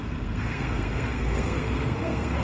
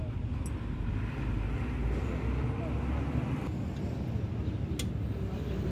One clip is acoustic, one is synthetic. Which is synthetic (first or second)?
first